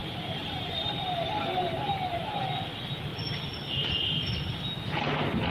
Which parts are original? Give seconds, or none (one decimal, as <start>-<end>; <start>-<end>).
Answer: 2.4-5.5